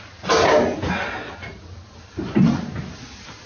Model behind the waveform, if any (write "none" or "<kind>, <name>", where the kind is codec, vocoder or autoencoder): none